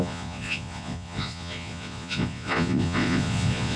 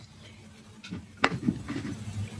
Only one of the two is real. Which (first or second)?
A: second